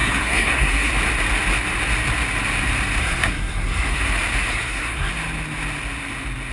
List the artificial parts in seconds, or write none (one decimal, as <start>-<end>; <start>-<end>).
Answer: 0.0-0.9; 3.0-4.0; 4.5-5.1